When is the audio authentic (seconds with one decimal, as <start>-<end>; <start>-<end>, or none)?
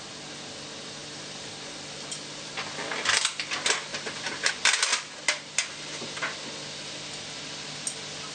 0.0-1.0; 2.5-3.9; 4.5-8.3